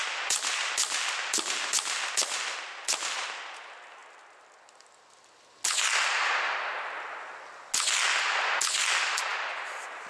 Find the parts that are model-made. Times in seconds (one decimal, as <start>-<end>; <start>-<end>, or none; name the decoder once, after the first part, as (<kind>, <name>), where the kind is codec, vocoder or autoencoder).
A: none